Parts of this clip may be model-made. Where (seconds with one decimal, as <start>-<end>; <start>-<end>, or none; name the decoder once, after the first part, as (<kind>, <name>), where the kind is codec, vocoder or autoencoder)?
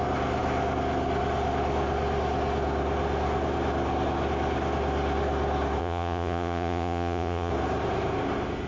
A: 5.8-7.5 (vocoder, Vocos)